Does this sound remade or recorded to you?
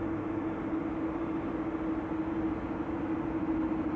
recorded